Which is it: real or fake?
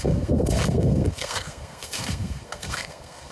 fake